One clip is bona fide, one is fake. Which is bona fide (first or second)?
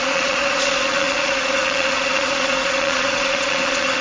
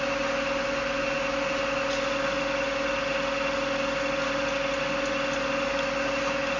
second